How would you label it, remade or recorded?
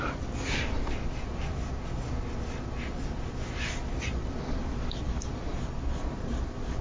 recorded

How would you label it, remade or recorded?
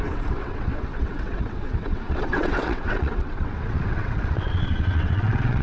remade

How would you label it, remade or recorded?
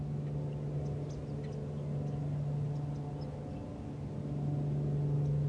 recorded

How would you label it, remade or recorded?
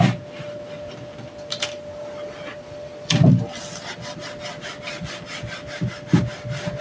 recorded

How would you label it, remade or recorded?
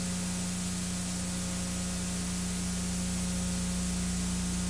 recorded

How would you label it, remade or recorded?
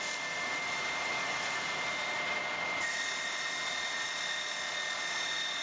recorded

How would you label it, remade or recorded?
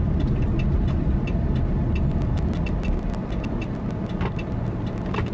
recorded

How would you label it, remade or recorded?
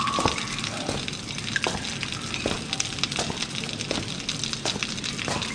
recorded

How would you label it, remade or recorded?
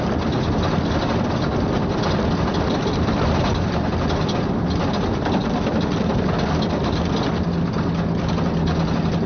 recorded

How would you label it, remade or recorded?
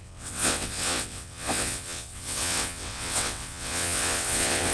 remade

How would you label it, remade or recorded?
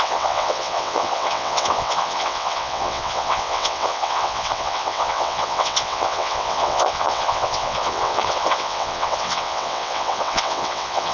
remade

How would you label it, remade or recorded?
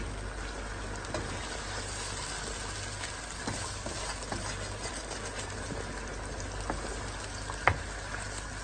recorded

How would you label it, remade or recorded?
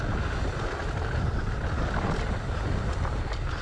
recorded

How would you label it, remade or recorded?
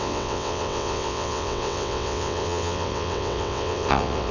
remade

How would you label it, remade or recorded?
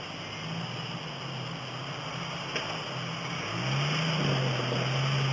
recorded